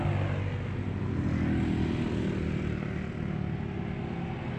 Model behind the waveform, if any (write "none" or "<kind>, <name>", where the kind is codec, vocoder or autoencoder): none